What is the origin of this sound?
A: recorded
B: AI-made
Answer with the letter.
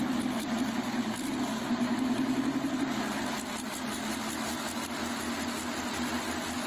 A